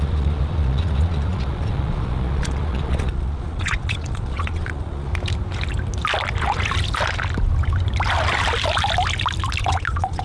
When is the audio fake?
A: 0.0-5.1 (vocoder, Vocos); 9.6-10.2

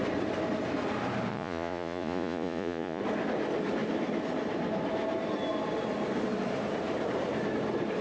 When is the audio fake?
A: 1.3-3.0 (vocoder, Vocos)

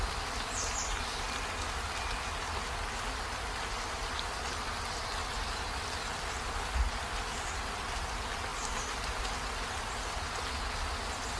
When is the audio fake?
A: none

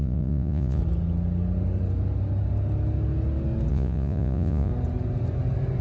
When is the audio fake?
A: 0.0-0.8 (vocoder, Vocos); 3.7-4.7